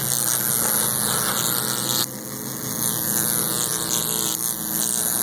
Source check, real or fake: real